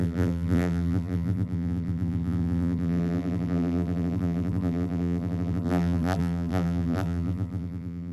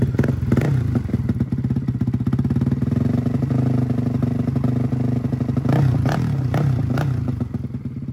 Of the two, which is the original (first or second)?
second